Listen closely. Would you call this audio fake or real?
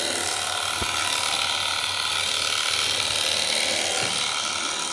real